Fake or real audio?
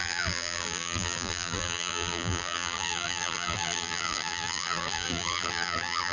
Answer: fake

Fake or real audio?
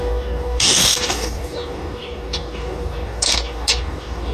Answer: fake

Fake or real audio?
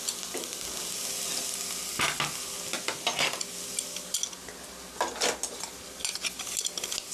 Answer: real